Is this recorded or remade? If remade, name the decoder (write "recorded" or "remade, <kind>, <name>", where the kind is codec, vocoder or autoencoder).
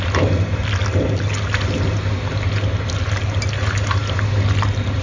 recorded